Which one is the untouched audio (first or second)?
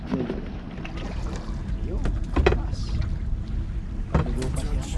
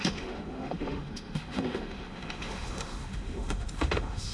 first